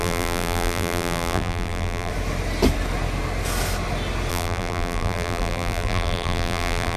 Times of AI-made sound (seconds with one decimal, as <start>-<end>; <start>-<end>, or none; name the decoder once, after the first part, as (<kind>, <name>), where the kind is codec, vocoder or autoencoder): 0.0-2.1 (vocoder, BigVGAN v2); 4.3-7.0